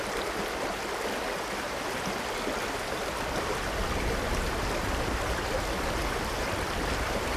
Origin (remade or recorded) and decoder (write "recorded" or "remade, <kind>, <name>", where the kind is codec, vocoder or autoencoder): recorded